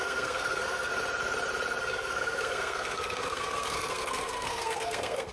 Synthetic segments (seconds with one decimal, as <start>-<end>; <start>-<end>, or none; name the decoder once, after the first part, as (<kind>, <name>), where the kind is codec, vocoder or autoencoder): 0.0-0.9 (codec, SNAC); 1.8-5.3